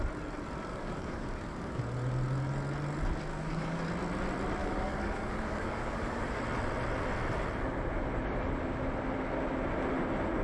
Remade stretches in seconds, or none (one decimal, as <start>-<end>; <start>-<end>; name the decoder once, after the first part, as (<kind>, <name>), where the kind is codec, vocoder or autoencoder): 0.7-1.8 (codec, DAC); 3.3-3.8; 4.6-6.4